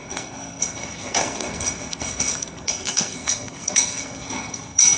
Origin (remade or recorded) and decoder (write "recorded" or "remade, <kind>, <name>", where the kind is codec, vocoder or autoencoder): remade, codec, SNAC